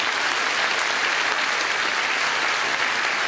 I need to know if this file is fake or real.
real